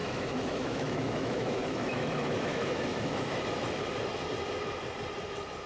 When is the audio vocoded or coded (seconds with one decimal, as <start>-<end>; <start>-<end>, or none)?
0.0-3.4